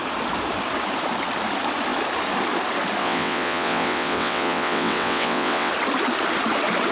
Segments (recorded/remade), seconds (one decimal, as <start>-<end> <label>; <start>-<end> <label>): 0.0-3.0 recorded; 3.0-5.7 remade; 5.7-6.9 recorded